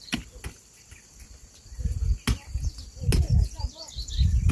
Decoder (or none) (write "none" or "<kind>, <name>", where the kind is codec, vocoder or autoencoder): none